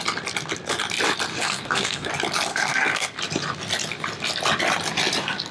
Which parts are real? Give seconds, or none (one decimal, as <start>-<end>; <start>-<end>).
0.0-1.3; 2.1-2.5; 3.2-5.5